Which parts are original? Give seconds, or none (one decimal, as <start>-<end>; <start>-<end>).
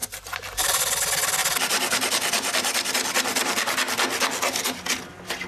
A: 0.8-1.4; 2.9-5.5